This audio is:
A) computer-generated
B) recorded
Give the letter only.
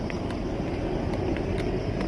B